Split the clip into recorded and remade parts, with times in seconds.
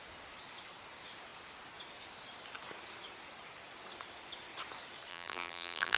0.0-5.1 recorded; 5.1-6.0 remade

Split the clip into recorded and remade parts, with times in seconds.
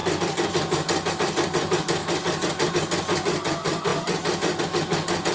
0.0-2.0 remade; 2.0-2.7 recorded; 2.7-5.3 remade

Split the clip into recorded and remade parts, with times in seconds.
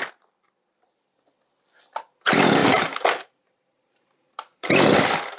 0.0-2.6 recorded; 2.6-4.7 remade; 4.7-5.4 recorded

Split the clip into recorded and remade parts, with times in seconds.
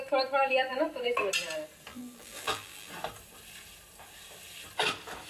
0.0-1.9 recorded; 1.9-2.9 remade; 2.9-5.3 recorded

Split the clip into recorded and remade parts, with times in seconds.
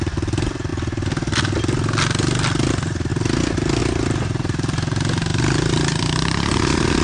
0.0-5.3 recorded; 5.3-6.0 remade; 6.0-7.0 recorded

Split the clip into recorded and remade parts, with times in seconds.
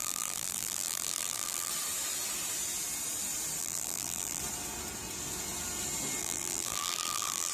0.0-1.7 remade; 1.7-3.6 recorded; 3.6-4.4 remade; 4.4-6.2 recorded; 6.2-7.5 remade